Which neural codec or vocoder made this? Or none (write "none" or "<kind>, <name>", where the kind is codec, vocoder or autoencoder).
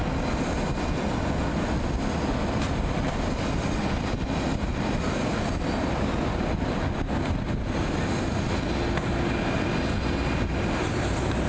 none